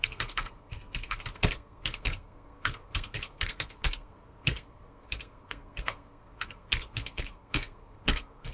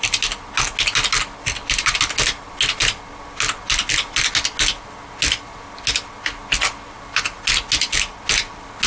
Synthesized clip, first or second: first